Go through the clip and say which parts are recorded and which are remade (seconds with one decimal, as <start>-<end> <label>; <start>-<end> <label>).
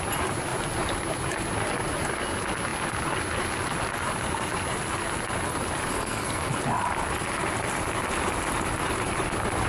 0.0-5.9 recorded; 5.9-6.5 remade; 6.5-9.7 recorded